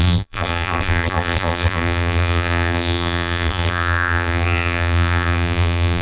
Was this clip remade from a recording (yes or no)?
yes